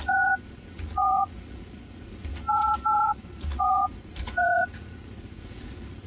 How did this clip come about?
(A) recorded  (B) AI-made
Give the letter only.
B